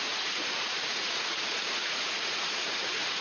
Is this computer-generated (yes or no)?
yes